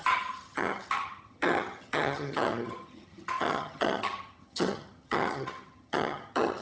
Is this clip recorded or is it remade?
remade